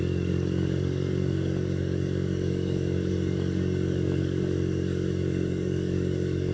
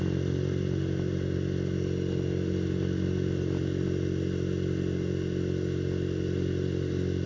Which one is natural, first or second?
second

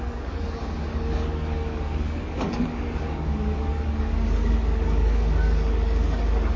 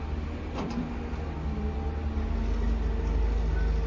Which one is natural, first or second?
second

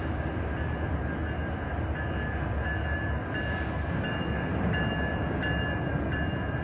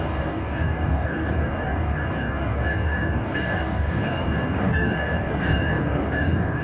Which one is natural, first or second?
first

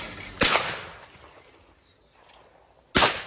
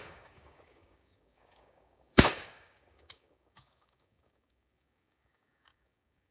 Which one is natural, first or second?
first